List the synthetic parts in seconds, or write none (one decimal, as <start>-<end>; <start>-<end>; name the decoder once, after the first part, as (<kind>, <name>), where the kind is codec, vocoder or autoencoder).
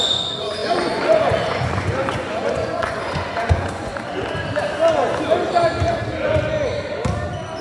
0.0-3.9 (vocoder, Vocos)